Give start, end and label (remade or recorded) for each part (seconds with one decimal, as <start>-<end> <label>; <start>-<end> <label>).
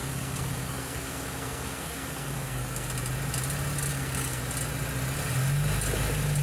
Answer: 0.0-2.9 remade; 2.9-3.9 recorded; 3.9-4.4 remade; 4.4-6.4 recorded